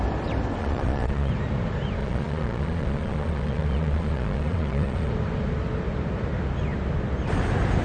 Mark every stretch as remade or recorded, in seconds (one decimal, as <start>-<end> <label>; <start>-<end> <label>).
0.0-0.6 recorded; 0.6-1.3 remade; 1.3-2.0 recorded; 2.0-5.1 remade; 5.1-7.8 recorded